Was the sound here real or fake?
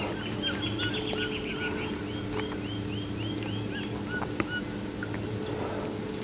real